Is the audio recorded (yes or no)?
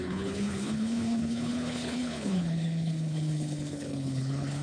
no